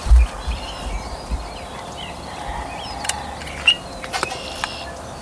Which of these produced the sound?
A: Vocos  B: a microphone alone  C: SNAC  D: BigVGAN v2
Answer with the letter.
D